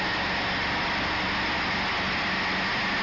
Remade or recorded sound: recorded